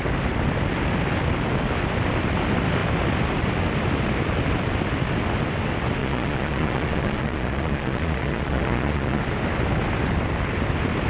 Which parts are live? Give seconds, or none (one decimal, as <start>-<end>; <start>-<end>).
0.0-6.0; 9.2-11.1